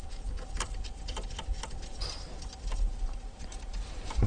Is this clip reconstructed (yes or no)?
no